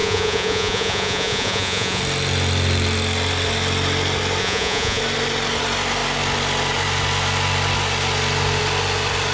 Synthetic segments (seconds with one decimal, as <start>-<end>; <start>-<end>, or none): 0.0-2.0; 4.4-5.0